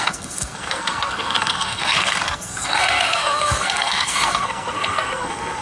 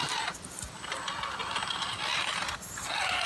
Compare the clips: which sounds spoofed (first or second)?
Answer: first